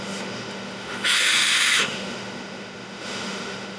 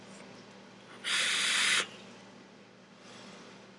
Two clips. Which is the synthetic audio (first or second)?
first